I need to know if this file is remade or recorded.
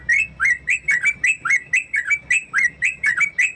recorded